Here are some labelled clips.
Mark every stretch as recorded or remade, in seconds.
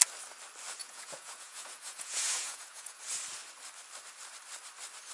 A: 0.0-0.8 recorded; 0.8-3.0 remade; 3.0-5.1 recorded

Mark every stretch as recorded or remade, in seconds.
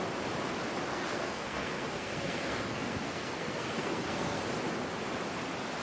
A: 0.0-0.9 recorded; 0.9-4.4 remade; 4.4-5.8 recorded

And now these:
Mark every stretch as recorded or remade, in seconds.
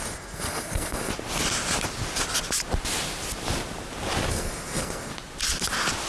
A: 0.0-1.1 remade; 1.1-4.3 recorded; 4.3-5.1 remade; 5.1-6.1 recorded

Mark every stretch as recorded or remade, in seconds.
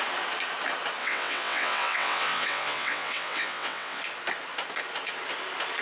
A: 0.0-1.0 recorded; 1.0-4.0 remade; 4.0-5.8 recorded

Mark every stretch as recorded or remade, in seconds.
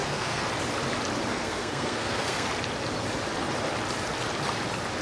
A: 0.0-0.5 remade; 0.5-1.3 recorded; 1.3-2.5 remade; 2.5-5.0 recorded